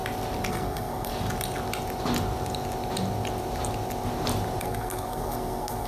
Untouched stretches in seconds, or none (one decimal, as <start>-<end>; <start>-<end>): 0.0-0.5; 1.1-4.6